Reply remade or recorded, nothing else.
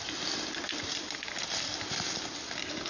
recorded